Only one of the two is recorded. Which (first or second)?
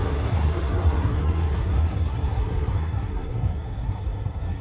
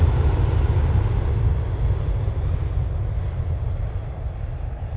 second